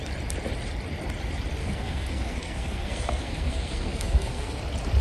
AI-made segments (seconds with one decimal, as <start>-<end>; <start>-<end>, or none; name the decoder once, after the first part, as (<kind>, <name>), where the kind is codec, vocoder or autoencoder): 1.6-4.6 (codec, SNAC)